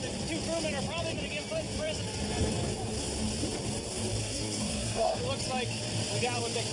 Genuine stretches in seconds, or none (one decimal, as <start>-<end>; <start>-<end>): 0.0-4.2; 5.2-6.7